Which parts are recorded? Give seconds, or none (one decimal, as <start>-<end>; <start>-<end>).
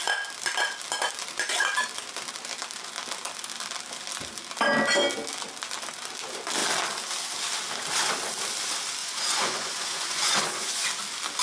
0.0-9.0; 10.9-11.4